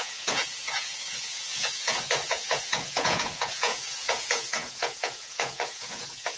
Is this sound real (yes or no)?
no